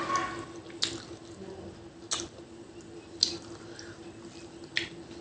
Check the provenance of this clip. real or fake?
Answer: real